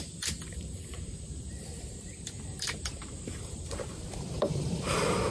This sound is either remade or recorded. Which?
remade